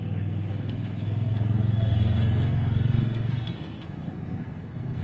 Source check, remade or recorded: remade